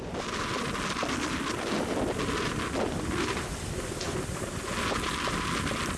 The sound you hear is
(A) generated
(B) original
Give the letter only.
B